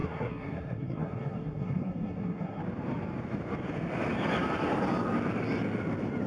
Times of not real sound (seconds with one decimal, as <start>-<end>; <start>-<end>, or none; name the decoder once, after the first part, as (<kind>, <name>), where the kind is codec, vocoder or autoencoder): 0.0-2.6 (codec, SNAC)